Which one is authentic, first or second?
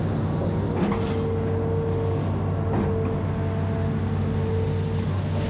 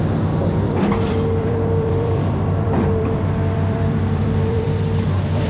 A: first